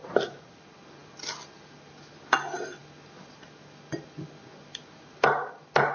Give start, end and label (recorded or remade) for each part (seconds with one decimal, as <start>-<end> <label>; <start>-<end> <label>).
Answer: 0.0-0.6 remade; 0.6-5.9 recorded